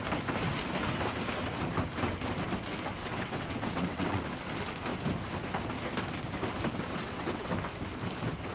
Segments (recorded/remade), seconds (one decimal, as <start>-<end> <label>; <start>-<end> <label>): 0.0-3.0 recorded; 3.0-4.2 remade; 4.2-6.9 recorded; 6.9-7.5 remade; 7.5-8.5 recorded